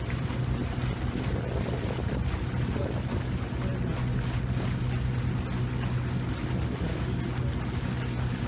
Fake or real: real